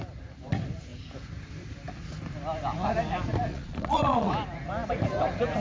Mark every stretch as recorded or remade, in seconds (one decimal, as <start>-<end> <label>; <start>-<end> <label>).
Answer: 0.0-3.5 recorded; 3.5-4.3 remade; 4.3-5.6 recorded